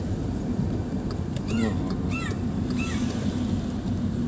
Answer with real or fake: real